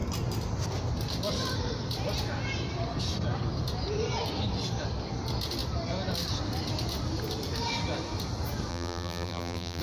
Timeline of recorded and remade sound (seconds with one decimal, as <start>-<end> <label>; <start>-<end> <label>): 0.0-8.7 recorded; 8.7-9.8 remade